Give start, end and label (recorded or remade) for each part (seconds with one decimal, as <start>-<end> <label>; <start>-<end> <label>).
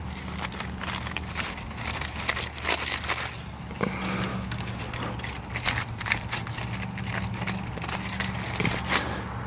0.0-4.3 recorded; 4.3-4.8 remade; 4.8-9.5 recorded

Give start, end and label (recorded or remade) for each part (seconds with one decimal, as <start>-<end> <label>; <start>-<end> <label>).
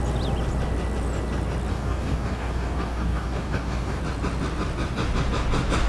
0.0-1.7 recorded; 1.7-4.0 remade; 4.0-5.9 recorded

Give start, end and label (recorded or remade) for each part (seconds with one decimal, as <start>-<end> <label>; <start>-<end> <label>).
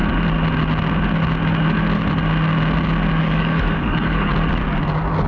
0.0-3.2 recorded; 3.2-4.3 remade; 4.3-5.3 recorded